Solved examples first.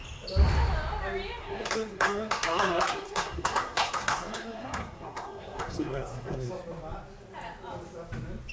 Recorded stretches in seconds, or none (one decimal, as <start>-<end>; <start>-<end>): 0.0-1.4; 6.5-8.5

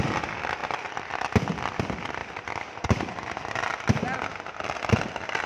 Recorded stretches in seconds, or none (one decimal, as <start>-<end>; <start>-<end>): 0.0-5.5

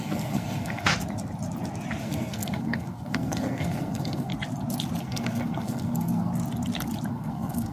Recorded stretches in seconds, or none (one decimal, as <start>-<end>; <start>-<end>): 0.9-2.0; 4.3-5.0; 6.3-7.1